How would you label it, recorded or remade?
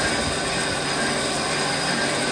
recorded